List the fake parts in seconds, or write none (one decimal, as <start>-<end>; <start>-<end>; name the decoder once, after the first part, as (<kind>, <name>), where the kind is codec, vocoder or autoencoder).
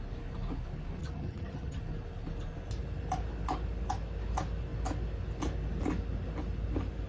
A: 1.0-1.8 (vocoder, HiFi-GAN)